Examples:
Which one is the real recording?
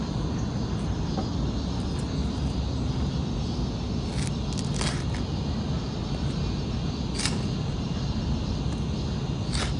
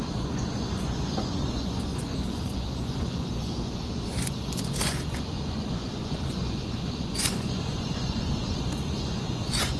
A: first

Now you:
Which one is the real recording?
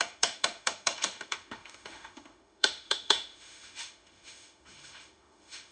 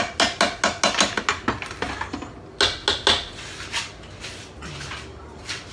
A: second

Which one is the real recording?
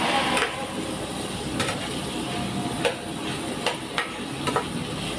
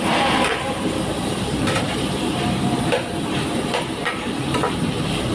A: first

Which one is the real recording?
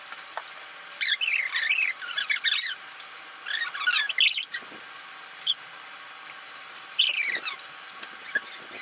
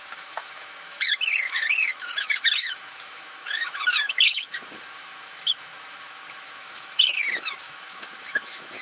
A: first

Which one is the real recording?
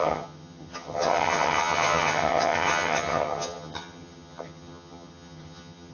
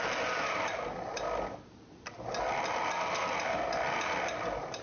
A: second